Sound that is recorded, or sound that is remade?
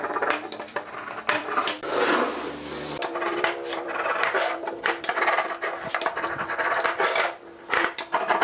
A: remade